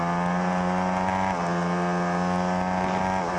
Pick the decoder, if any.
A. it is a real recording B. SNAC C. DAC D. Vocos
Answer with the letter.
A